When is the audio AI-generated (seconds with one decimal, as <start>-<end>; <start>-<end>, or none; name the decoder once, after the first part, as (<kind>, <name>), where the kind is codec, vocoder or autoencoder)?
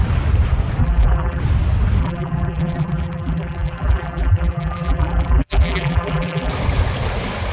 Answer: 0.8-1.4 (vocoder, BigVGAN v2); 2.0-6.5